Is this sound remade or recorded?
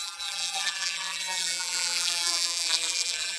remade